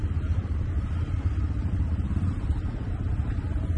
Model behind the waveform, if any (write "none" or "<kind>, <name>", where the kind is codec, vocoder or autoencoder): vocoder, BigVGAN v2